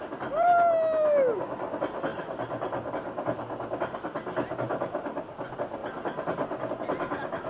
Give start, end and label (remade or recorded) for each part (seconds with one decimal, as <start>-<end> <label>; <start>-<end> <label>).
0.0-7.5 recorded